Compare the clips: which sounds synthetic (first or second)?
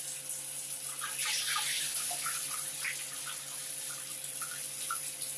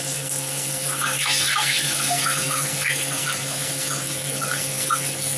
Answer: second